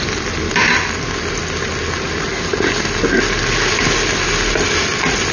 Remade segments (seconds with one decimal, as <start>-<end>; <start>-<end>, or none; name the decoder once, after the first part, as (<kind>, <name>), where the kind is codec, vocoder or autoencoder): none